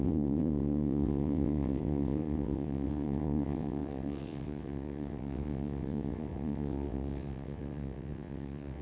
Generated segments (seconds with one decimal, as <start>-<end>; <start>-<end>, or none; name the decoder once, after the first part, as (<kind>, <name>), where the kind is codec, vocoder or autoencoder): 0.0-8.8 (vocoder, WaveNeXt)